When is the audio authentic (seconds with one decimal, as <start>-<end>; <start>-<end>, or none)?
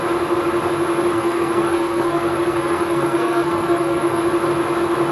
0.0-1.1; 4.2-5.1